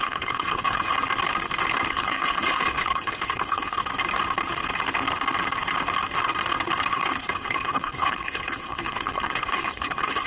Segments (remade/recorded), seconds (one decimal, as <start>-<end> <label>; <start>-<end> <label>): 0.0-0.9 remade; 0.9-1.9 recorded; 1.9-3.8 remade; 3.8-6.9 recorded; 6.9-10.3 remade

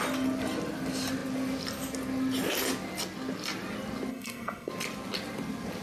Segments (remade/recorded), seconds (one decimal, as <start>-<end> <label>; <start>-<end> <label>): 0.0-4.1 recorded; 4.1-4.7 remade; 4.7-5.8 recorded

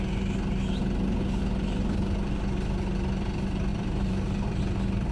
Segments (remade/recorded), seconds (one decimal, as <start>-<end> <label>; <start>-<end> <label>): 0.0-3.7 recorded; 3.7-4.6 remade; 4.6-5.1 recorded

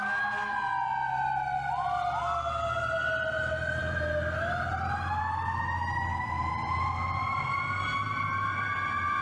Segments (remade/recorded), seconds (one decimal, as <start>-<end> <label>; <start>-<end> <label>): 0.0-3.8 recorded; 3.8-5.2 remade; 5.2-7.2 recorded; 7.2-8.7 remade; 8.7-9.2 recorded

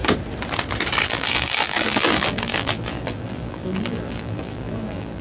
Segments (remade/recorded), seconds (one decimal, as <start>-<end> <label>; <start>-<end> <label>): 0.0-1.0 recorded; 1.0-5.2 remade